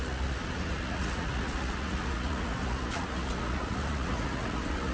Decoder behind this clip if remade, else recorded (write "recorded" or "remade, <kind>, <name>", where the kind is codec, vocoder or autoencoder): remade, vocoder, Vocos